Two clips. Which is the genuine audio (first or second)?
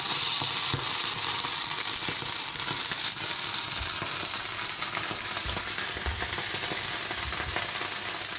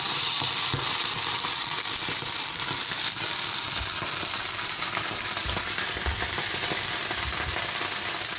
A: first